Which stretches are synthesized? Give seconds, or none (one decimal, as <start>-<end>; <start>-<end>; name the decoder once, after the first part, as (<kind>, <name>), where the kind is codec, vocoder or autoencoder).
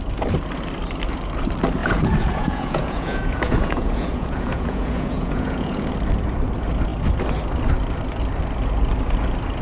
1.8-5.9 (vocoder, Vocos)